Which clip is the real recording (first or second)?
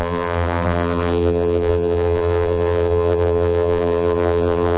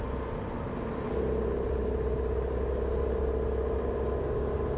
second